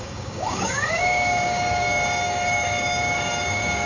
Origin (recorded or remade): remade